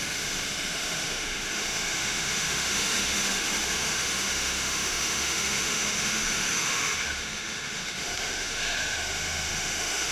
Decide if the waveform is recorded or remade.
remade